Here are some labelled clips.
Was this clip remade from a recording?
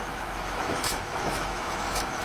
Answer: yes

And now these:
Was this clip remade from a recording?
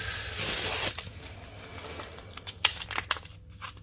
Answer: no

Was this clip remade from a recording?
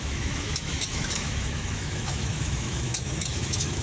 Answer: yes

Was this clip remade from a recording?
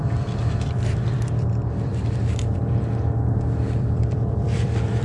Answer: yes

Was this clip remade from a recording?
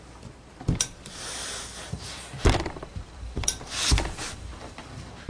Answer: yes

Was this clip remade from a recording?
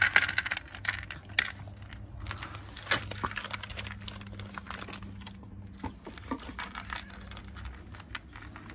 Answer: no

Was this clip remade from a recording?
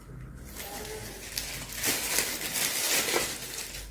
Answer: no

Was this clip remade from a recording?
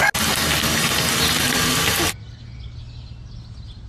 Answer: no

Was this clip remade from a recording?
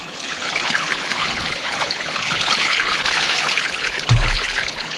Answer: yes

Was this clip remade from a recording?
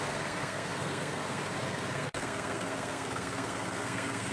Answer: yes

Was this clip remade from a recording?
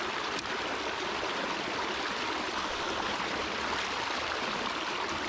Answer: yes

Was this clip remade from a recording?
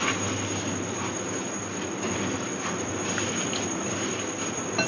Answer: no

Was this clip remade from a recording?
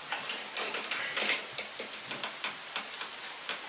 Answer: no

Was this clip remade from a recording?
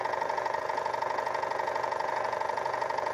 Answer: yes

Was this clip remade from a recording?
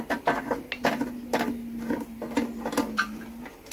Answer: no